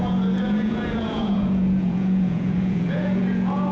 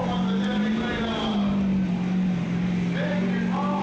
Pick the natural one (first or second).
second